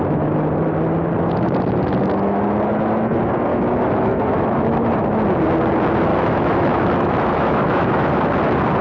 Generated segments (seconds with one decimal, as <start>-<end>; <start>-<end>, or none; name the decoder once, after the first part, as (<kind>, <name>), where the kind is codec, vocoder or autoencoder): 3.5-4.9 (autoencoder, DAC-VAE); 6.1-8.2